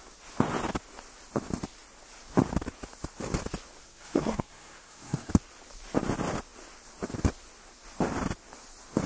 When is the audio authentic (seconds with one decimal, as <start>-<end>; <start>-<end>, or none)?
0.0-3.8; 5.3-9.1